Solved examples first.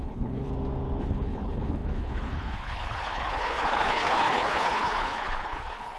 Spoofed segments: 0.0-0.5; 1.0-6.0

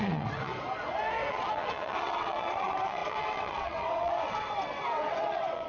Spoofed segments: 0.0-0.5; 1.3-5.7

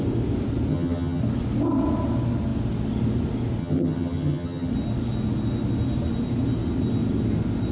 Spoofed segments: 0.7-1.2; 3.6-4.7

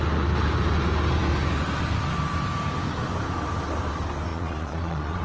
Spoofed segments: 4.3-5.2